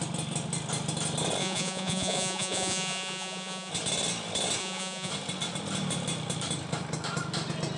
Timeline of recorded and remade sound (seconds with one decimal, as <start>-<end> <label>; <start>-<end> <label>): 0.0-1.4 recorded; 1.4-3.7 remade; 3.7-4.6 recorded; 4.6-5.1 remade; 5.1-7.8 recorded